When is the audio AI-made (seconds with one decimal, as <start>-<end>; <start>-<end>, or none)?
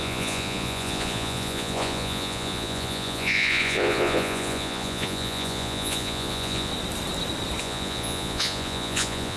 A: 0.0-6.7; 7.6-9.4